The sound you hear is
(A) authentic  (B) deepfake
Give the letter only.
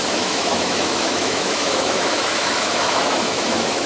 B